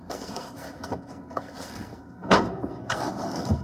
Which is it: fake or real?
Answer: fake